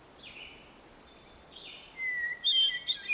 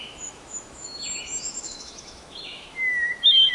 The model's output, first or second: second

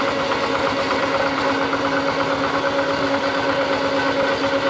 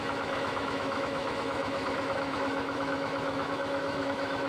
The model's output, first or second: second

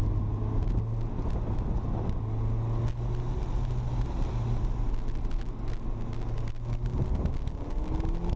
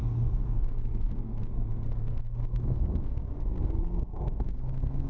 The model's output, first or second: second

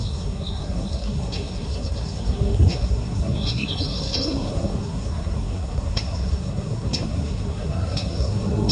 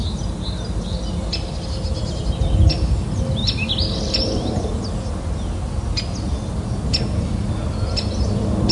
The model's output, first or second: first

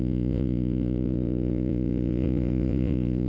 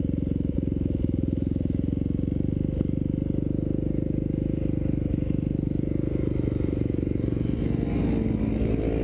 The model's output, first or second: first